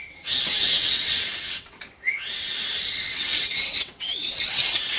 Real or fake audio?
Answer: fake